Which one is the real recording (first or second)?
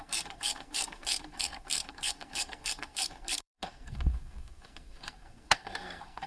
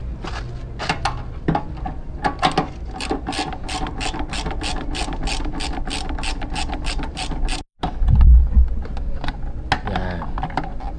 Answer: second